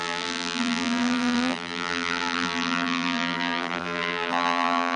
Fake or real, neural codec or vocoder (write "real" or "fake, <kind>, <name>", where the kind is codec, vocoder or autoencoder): fake, vocoder, BigVGAN v2